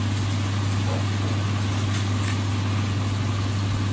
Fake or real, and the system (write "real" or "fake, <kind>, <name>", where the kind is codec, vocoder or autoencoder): real